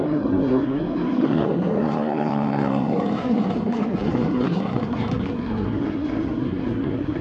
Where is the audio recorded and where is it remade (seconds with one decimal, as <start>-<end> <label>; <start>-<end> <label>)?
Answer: 0.0-7.2 remade